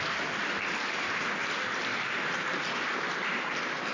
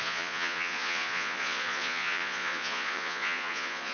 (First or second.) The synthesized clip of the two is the second